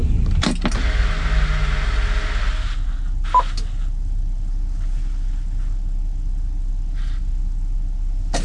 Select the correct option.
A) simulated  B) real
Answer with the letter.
B